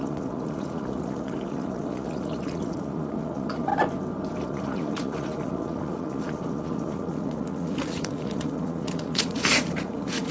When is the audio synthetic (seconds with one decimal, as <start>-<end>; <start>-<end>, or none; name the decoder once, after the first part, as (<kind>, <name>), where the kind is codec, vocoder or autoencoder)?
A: 0.0-3.7 (vocoder, Vocos); 4.4-10.3